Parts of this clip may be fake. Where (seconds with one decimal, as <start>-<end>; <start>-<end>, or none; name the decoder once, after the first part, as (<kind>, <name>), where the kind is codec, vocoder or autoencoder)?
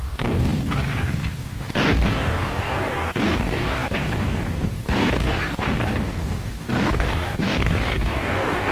0.0-8.7 (codec, DAC)